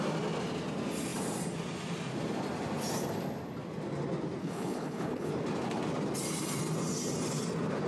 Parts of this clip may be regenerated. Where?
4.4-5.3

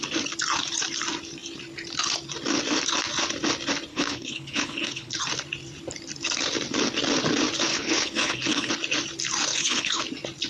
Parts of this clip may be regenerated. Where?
3.9-5.2; 7.7-8.7; 9.5-10.0

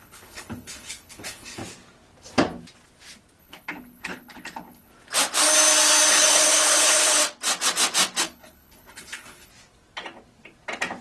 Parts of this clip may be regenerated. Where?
0.0-1.6; 3.4-4.9; 6.1-7.2; 8.2-9.5

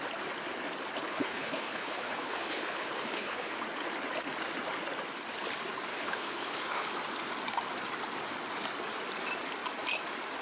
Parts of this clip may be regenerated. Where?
1.1-3.6; 5.9-6.9

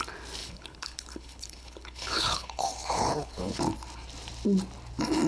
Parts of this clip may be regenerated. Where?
0.4-3.6